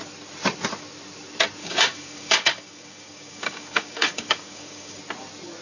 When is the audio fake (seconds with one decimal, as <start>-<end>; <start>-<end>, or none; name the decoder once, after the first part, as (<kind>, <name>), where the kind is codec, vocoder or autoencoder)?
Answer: 1.6-5.0 (codec, DAC)